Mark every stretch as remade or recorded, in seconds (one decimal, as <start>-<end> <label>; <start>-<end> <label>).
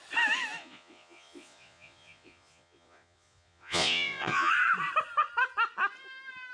0.0-0.6 recorded; 0.6-4.5 remade; 4.5-6.5 recorded